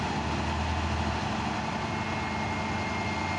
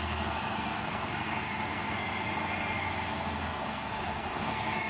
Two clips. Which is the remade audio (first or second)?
second